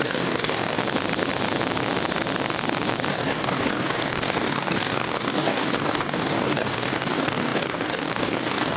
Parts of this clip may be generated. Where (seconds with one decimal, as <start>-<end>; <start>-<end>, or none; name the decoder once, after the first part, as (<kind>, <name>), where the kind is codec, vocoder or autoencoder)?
0.0-0.8 (codec, DAC); 3.1-8.8